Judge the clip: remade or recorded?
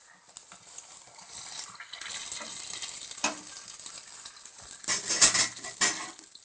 recorded